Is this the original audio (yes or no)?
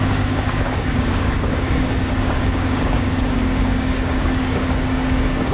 no